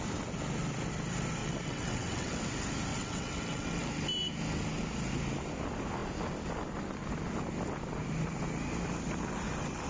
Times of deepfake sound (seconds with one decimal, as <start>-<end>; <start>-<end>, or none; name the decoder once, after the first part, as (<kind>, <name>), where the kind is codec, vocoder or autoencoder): 1.4-2.4 (vocoder, WaveNeXt); 2.9-3.9

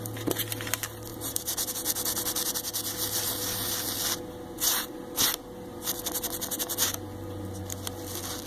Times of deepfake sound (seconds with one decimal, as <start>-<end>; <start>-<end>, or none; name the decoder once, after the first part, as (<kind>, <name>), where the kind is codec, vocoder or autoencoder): 1.1-1.7 (vocoder, BigVGAN v2)